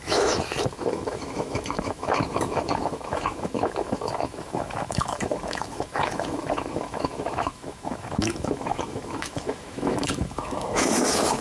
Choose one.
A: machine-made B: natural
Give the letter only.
A